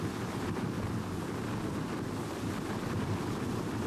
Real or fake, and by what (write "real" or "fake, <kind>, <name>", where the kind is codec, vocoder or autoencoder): real